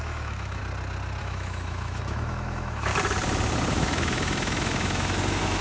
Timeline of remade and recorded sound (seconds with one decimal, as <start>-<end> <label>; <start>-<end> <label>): 0.0-0.6 remade; 0.6-1.2 recorded; 1.2-2.9 remade; 2.9-3.7 recorded; 3.7-5.6 remade